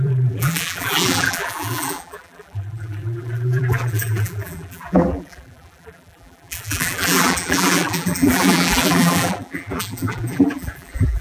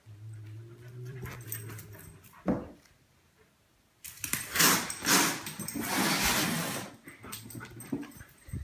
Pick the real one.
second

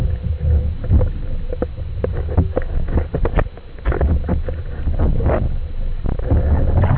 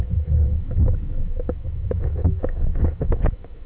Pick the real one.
first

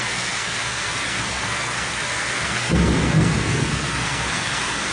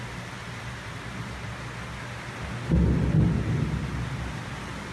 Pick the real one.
second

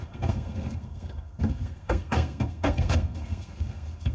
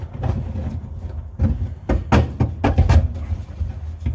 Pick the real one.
second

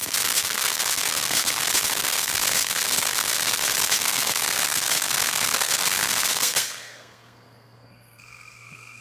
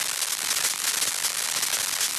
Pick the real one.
second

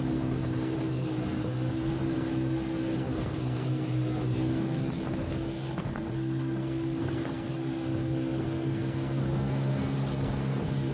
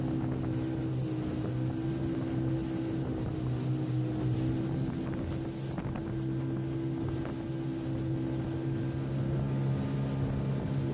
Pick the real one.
second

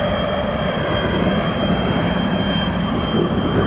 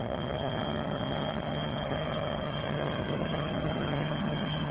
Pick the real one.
first